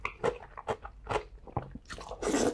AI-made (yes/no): no